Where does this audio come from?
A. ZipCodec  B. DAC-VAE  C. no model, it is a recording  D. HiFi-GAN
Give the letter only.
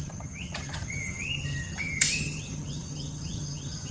D